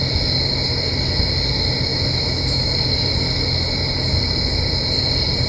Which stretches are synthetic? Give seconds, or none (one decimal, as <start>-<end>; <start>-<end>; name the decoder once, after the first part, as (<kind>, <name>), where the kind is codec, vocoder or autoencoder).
1.9-2.7 (autoencoder, DAC-VAE)